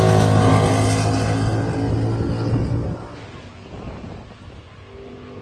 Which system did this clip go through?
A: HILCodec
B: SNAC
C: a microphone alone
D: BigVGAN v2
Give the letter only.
C